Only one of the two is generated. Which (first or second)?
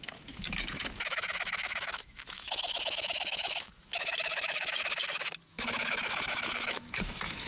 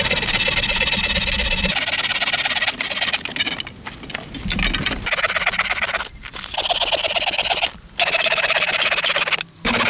first